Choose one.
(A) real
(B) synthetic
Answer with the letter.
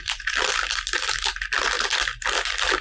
A